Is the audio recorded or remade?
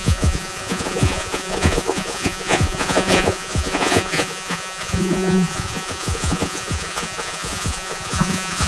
remade